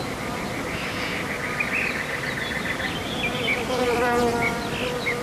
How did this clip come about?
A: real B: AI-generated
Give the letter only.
A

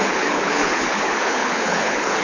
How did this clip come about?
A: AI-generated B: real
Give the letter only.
A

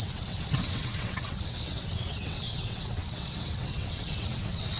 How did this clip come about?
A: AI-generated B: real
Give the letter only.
A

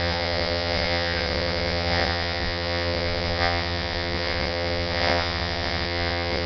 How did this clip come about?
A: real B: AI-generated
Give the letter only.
B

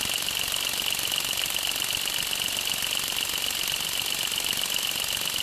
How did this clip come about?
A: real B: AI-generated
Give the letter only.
A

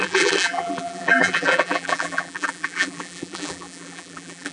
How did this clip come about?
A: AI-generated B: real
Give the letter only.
A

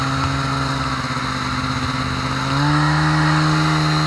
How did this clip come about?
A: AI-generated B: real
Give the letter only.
B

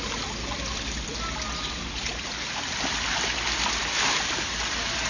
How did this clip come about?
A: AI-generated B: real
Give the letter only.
B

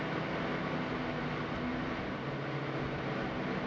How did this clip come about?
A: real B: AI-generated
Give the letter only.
A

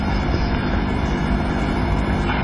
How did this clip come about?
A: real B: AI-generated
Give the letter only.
A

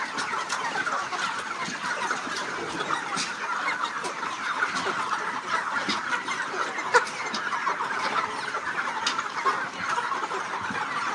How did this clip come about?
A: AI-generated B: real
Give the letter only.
B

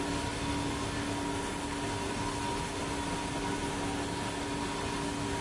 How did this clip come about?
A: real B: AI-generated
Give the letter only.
A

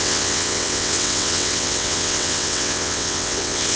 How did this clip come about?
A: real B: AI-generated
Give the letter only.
B